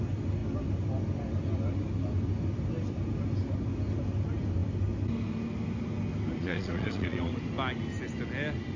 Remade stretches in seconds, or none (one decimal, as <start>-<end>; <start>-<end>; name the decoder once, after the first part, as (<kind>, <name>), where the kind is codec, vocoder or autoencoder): 6.4-7.3 (vocoder, Vocos)